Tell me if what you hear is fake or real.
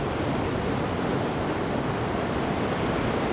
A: real